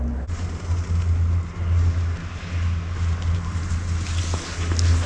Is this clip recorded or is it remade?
recorded